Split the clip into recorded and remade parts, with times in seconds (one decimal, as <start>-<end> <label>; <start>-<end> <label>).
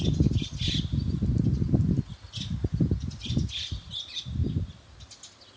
0.0-5.6 recorded